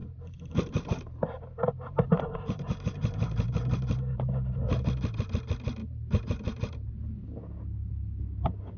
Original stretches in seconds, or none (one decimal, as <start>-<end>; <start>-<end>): 4.8-5.8; 6.9-8.8